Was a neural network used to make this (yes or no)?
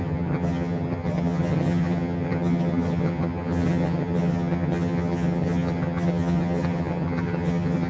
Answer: yes